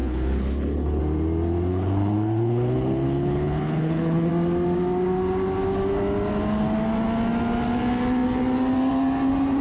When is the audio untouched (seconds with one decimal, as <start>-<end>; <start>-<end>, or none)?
1.0-1.7; 4.3-9.6